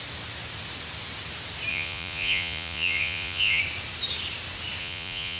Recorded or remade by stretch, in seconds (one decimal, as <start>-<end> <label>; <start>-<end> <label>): 0.0-1.7 recorded; 1.7-3.6 remade; 3.6-4.8 recorded; 4.8-5.4 remade